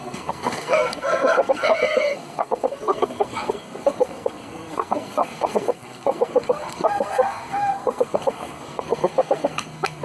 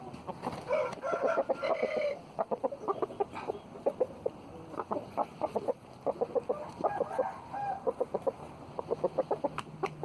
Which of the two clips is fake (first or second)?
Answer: first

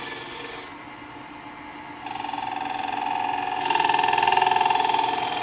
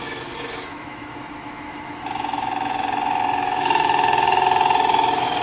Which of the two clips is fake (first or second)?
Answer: second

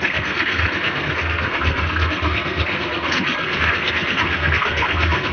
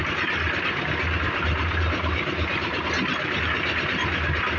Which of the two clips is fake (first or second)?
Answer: first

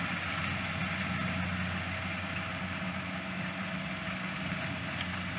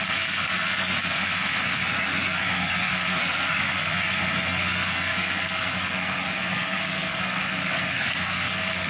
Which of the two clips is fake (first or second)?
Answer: second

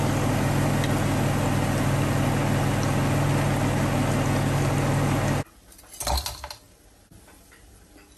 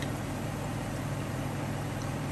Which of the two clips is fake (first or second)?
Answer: second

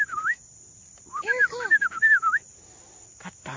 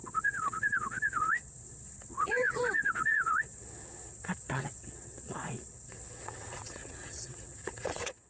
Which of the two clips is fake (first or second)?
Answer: second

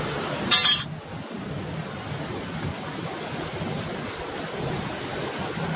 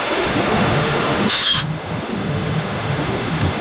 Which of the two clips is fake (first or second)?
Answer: second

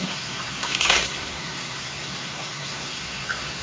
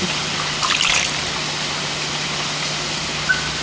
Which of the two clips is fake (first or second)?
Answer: first